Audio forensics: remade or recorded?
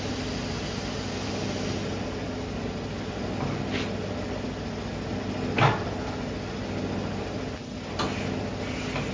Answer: recorded